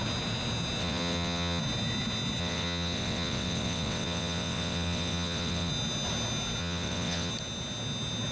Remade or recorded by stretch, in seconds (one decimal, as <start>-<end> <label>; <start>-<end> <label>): 0.0-0.8 recorded; 0.8-1.6 remade; 1.6-2.4 recorded; 2.4-5.7 remade; 5.7-6.6 recorded; 6.6-7.3 remade; 7.3-8.3 recorded